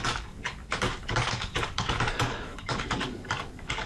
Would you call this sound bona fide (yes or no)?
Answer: no